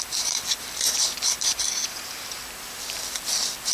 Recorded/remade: recorded